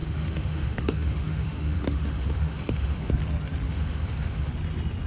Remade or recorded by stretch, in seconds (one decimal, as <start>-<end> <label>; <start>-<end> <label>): 0.0-3.1 remade; 3.1-3.7 recorded; 3.7-4.5 remade; 4.5-5.1 recorded